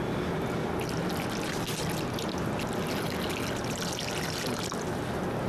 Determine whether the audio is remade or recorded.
recorded